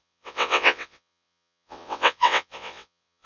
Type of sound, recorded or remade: remade